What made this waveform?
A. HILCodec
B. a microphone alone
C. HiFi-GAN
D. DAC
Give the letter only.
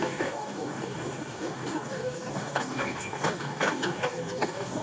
D